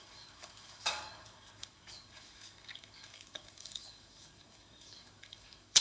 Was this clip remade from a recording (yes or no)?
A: yes